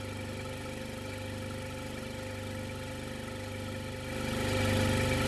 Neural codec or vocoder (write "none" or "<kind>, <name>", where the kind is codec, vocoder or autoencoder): none